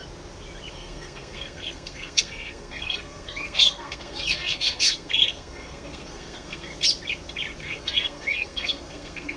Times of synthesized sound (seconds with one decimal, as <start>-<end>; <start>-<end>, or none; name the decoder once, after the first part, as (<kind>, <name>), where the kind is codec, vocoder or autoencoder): 0.7-6.7 (codec, SNAC); 7.6-9.4